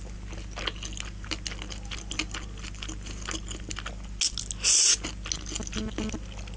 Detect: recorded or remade recorded